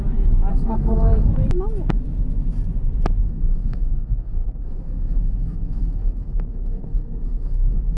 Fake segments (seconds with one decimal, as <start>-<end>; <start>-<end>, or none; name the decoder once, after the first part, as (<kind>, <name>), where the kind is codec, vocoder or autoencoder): 0.5-1.3 (codec, SNAC); 3.2-8.0